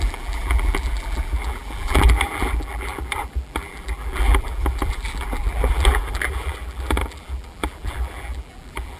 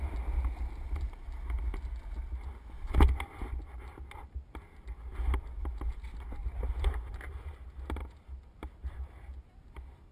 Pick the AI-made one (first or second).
first